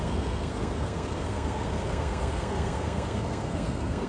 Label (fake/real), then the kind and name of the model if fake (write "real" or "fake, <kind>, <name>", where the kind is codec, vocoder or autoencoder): fake, codec, SNAC